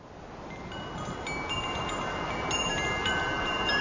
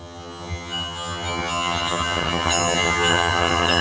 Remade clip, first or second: second